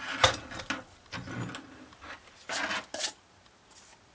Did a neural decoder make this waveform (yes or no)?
no